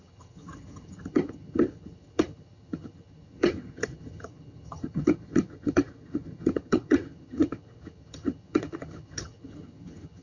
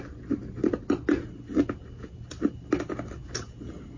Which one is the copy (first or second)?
first